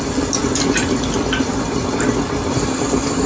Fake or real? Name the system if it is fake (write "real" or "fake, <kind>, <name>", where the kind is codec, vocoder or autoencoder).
real